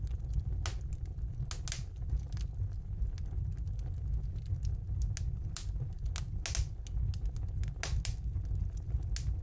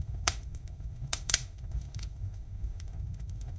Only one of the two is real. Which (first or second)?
first